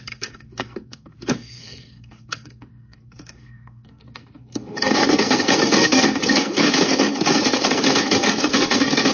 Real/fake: fake